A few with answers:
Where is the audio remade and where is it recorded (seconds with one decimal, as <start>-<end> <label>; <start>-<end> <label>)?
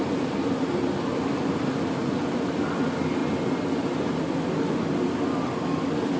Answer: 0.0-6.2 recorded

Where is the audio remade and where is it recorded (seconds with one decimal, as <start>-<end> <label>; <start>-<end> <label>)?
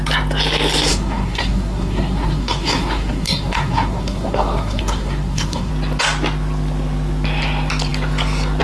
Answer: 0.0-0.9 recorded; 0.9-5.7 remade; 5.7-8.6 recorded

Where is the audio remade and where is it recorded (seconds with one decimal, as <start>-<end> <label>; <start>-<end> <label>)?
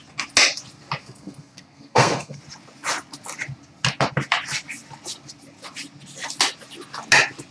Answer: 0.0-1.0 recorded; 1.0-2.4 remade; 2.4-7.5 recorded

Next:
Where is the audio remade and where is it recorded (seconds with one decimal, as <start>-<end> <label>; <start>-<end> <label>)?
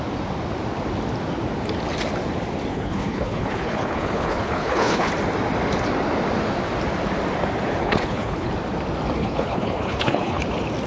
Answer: 0.0-2.7 recorded; 2.7-5.1 remade; 5.1-7.8 recorded; 7.8-8.5 remade; 8.5-9.2 recorded; 9.2-10.4 remade; 10.4-10.9 recorded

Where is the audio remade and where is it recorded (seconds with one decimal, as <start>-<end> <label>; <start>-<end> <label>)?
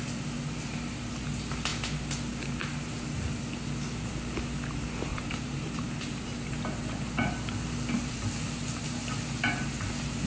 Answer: 0.0-5.1 recorded; 5.1-5.9 remade; 5.9-8.0 recorded; 8.0-9.0 remade; 9.0-10.3 recorded